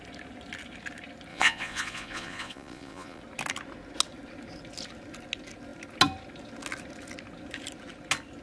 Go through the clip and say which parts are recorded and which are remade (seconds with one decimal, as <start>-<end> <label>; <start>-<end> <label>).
0.0-1.3 recorded; 1.3-3.2 remade; 3.2-8.4 recorded